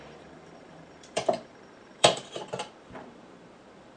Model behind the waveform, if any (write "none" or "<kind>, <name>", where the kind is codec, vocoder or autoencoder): vocoder, BigVGAN v2